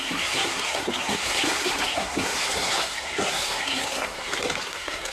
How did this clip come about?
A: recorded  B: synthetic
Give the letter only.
B